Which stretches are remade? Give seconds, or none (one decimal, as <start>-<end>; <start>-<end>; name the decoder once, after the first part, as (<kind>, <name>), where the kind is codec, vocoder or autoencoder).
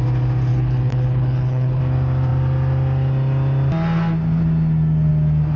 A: 0.5-1.8 (codec, HILCodec)